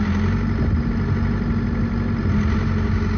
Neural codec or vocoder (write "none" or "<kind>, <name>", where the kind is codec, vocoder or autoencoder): none